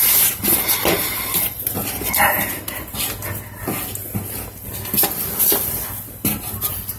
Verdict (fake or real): real